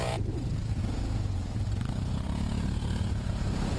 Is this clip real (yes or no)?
no